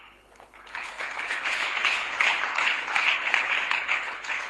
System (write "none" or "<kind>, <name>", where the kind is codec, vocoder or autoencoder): codec, HILCodec